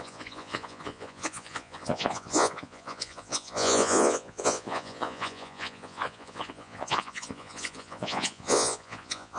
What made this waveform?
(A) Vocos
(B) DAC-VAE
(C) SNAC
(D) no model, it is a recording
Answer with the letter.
A